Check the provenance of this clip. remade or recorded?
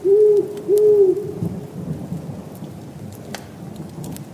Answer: recorded